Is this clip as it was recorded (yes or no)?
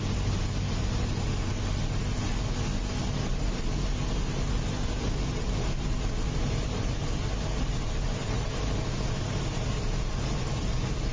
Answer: yes